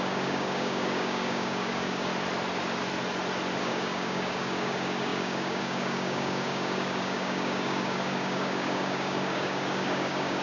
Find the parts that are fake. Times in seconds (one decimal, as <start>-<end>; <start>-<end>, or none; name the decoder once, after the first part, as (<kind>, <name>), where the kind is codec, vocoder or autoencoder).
0.0-2.1 (codec, DAC); 3.6-10.4